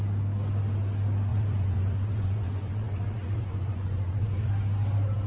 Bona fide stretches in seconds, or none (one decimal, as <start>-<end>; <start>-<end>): 0.0-1.3; 4.5-5.3